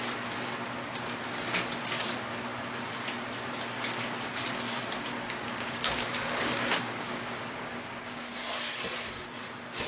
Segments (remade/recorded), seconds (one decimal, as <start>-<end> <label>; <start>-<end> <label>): 0.0-5.4 recorded; 5.4-8.4 remade; 8.4-9.9 recorded